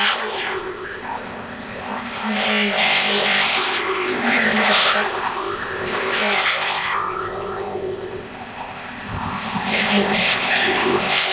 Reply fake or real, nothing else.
fake